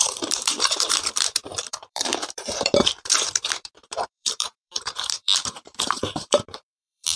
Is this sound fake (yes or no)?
yes